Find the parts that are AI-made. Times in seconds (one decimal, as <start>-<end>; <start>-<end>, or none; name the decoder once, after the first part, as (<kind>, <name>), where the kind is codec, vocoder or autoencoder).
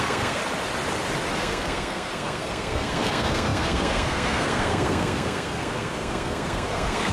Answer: 0.0-0.4 (codec, SNAC); 1.4-7.1